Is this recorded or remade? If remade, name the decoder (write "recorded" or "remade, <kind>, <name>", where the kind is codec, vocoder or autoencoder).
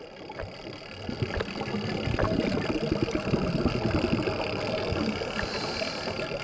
recorded